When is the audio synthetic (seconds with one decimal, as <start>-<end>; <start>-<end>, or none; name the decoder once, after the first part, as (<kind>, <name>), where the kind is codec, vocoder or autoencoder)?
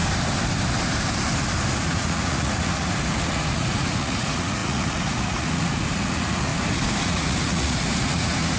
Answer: 1.8-6.5 (vocoder, Vocos); 7.0-8.6